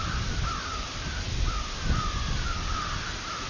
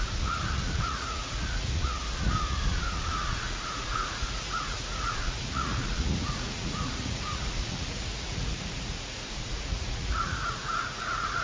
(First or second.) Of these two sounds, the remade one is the second